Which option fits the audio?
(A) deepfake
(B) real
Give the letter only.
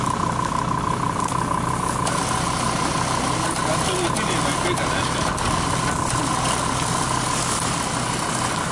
B